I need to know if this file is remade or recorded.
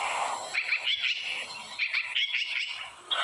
recorded